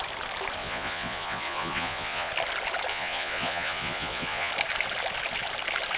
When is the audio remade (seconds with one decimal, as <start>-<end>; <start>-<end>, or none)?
0.6-2.3; 2.9-4.5